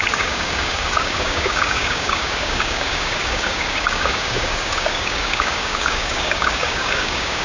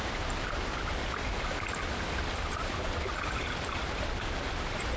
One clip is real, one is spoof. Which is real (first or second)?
second